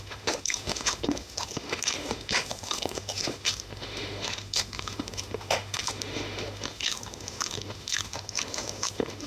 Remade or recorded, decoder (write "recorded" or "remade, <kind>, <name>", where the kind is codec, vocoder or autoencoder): remade, autoencoder, DAC-VAE